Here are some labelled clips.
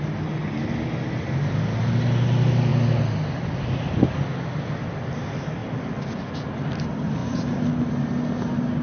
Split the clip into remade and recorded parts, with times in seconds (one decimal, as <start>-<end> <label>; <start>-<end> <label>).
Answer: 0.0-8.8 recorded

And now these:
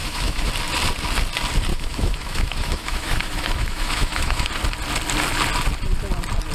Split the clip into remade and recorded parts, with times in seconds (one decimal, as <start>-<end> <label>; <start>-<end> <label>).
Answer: 0.0-0.5 remade; 0.5-1.7 recorded; 1.7-4.5 remade; 4.5-6.5 recorded

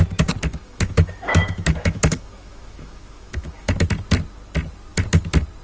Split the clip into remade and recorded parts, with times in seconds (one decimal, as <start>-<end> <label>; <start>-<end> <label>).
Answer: 0.0-0.5 recorded; 0.5-3.7 remade; 3.7-5.6 recorded